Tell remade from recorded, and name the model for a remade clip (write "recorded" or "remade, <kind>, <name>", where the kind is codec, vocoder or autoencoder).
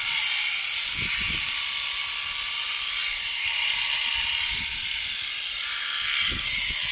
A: recorded